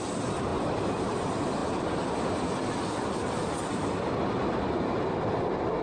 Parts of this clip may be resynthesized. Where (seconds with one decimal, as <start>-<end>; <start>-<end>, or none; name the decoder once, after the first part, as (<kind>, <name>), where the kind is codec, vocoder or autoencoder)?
none